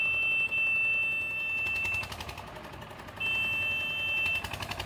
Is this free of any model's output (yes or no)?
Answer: yes